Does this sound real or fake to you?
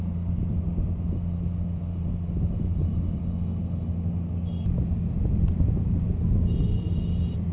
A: real